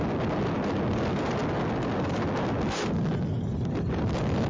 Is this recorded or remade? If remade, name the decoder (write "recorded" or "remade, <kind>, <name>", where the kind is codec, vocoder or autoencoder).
recorded